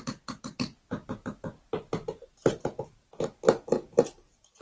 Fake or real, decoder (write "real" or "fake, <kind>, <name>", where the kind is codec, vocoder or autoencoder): real